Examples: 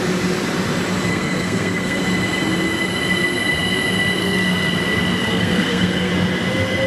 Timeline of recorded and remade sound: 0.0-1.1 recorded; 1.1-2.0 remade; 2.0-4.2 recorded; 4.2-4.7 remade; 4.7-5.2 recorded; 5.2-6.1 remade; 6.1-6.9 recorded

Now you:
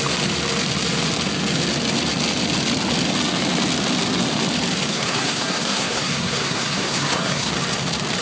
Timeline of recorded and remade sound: 0.0-4.9 recorded; 4.9-7.5 remade; 7.5-8.2 recorded